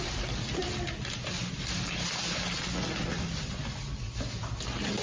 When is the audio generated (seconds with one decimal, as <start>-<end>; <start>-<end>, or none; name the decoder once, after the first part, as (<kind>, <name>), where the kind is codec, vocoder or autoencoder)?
none